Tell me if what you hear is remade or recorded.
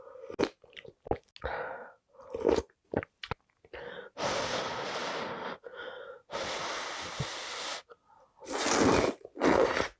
recorded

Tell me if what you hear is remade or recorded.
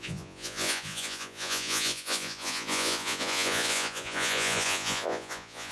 remade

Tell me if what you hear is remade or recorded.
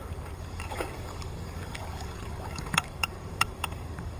remade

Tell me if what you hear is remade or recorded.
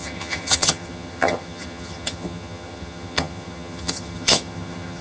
remade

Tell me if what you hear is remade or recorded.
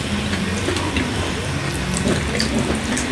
remade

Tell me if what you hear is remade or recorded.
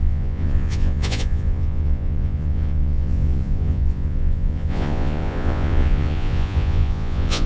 remade